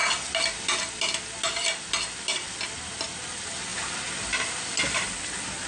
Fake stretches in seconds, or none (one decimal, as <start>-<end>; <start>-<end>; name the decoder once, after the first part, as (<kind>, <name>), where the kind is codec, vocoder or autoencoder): none